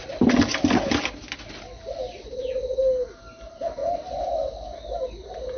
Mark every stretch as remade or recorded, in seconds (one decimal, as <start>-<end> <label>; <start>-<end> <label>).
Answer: 0.0-0.5 remade; 0.5-3.0 recorded; 3.0-3.8 remade; 3.8-5.1 recorded; 5.1-5.6 remade